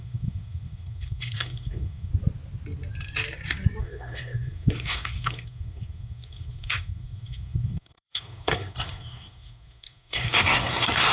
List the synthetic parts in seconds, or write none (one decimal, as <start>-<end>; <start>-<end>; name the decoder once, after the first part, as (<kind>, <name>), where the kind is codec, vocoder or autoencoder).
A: 0.0-2.1 (codec, SNAC); 3.8-11.1